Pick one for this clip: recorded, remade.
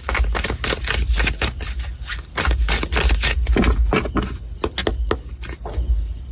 recorded